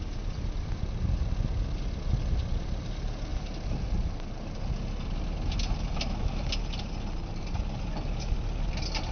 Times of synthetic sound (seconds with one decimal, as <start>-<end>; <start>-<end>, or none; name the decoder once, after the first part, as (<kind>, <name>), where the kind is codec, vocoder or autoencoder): none